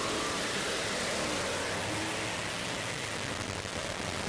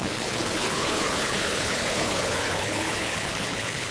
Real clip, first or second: first